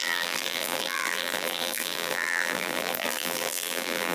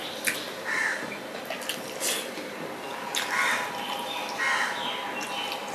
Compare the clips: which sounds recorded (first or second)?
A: second